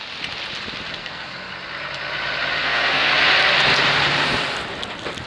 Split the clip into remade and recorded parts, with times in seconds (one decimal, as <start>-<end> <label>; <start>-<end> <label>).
0.0-1.0 recorded; 1.0-1.5 remade; 1.5-2.6 recorded; 2.6-3.1 remade; 3.1-5.3 recorded